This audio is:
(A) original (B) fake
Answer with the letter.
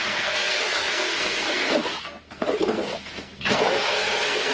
B